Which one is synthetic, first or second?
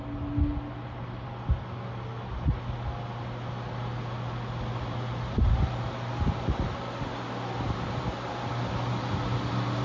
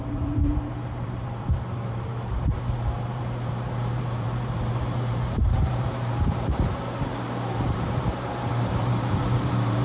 second